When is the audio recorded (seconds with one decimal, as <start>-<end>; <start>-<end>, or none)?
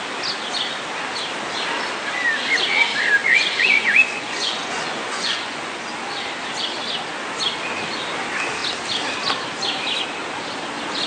0.0-3.2; 5.8-11.1